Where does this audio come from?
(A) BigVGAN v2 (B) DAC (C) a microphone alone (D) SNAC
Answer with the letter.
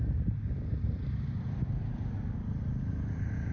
C